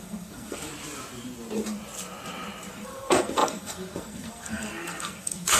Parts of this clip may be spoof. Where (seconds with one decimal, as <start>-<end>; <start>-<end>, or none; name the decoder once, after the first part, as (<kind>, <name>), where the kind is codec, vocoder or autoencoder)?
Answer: 0.0-0.7 (codec, SNAC); 2.7-5.6